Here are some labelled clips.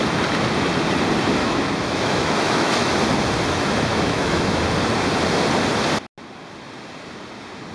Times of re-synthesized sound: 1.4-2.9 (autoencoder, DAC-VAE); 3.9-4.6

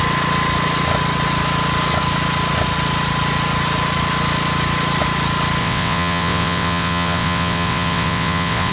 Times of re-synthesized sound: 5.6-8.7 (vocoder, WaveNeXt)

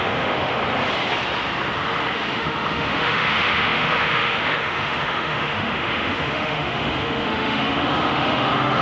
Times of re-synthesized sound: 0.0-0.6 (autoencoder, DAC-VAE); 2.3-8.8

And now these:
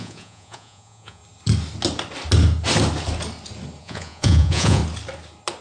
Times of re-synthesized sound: 0.0-1.2 (vocoder, Vocos); 3.8-4.8

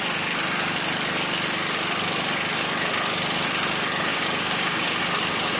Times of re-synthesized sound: 4.1-5.0 (codec, DAC)